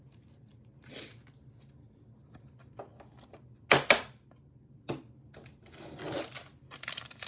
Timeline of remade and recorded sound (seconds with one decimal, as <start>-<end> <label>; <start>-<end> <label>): 0.0-7.3 recorded